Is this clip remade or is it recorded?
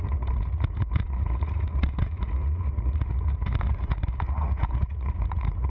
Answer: remade